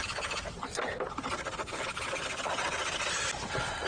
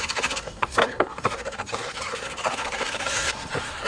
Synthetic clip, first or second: second